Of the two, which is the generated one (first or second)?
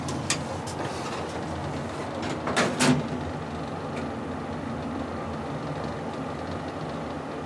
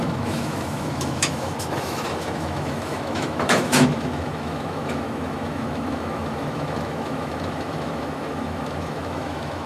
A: second